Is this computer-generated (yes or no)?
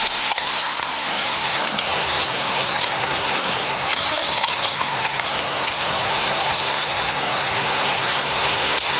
yes